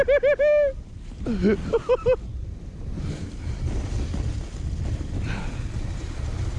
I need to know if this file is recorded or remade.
recorded